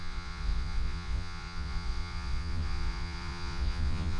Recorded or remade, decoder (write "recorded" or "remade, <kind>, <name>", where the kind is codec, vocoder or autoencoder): remade, vocoder, Vocos